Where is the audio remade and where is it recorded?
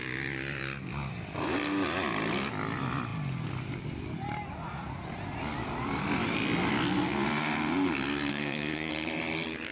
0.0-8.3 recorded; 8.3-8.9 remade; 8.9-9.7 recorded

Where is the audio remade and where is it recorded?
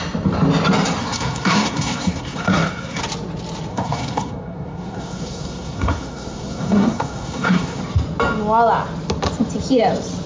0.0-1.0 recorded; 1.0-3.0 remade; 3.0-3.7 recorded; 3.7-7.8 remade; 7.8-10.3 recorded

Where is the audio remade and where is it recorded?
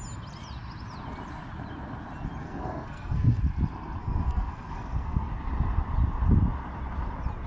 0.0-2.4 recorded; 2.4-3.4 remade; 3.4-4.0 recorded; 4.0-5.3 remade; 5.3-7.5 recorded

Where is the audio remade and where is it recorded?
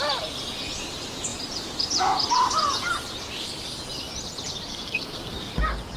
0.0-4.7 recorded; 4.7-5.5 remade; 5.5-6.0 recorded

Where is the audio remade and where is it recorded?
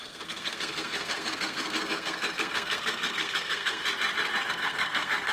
0.0-3.8 remade; 3.8-4.5 recorded; 4.5-5.3 remade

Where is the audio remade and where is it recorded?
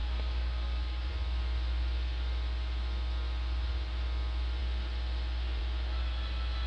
0.0-1.1 remade; 1.1-6.7 recorded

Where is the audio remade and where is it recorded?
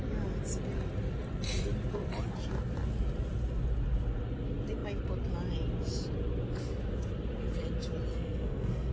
0.0-8.1 recorded; 8.1-8.9 remade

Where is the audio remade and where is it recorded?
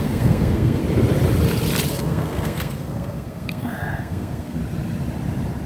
0.0-0.8 remade; 0.8-1.9 recorded; 1.9-4.6 remade; 4.6-5.7 recorded